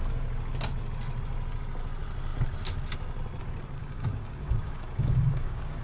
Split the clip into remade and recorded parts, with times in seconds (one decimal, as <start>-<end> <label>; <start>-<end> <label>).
0.0-3.8 recorded; 3.8-5.8 remade